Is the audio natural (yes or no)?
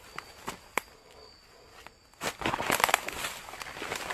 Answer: yes